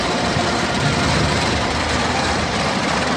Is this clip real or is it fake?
fake